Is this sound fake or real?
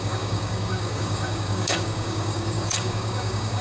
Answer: fake